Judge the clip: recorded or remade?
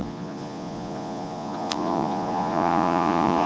remade